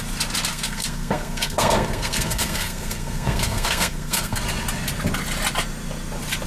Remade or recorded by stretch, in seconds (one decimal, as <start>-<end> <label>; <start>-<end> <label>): 0.0-0.5 recorded; 0.5-4.4 remade; 4.4-6.5 recorded